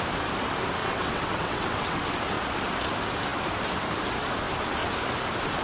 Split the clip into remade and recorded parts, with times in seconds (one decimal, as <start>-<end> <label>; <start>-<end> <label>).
0.0-0.8 recorded; 0.8-2.0 remade; 2.0-5.6 recorded